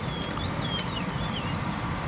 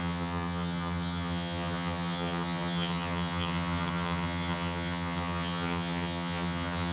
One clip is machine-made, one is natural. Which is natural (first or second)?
first